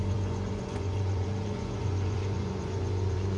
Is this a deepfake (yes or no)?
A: yes